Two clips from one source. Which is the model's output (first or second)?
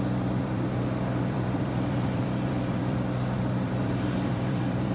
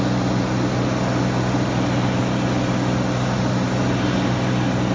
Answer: first